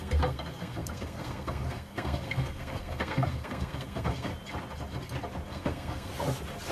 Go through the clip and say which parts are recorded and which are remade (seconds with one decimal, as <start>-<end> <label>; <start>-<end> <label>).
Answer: 0.0-4.3 remade; 4.3-5.5 recorded; 5.5-6.1 remade; 6.1-6.7 recorded